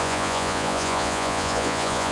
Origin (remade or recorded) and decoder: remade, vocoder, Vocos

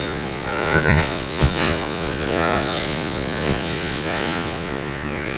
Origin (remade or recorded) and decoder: remade, vocoder, Vocos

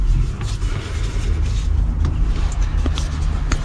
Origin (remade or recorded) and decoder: recorded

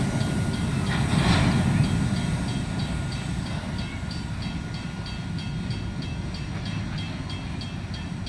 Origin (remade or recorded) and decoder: recorded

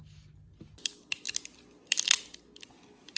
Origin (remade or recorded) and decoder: recorded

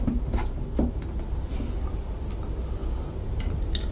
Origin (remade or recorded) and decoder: recorded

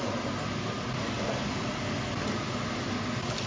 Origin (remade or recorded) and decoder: recorded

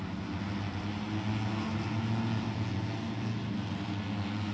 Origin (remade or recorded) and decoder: recorded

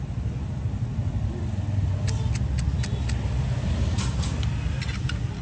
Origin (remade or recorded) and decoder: recorded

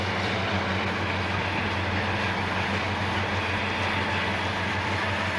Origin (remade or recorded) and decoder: recorded